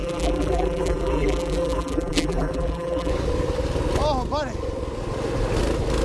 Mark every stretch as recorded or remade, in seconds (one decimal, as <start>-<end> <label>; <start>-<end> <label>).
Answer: 0.0-3.1 remade; 3.1-6.0 recorded